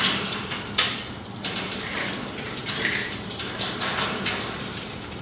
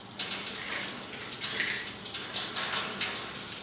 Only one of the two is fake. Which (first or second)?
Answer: first